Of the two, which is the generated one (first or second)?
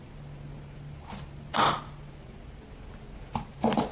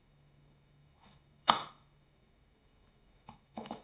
second